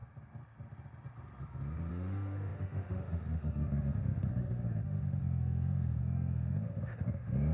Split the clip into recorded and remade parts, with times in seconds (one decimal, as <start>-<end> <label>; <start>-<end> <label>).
0.0-1.9 recorded; 1.9-7.5 remade